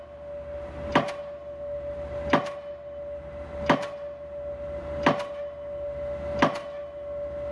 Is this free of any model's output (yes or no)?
yes